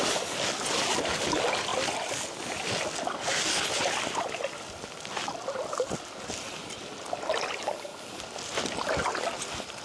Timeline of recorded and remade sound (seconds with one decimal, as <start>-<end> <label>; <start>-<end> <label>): 0.0-0.9 remade; 0.9-9.8 recorded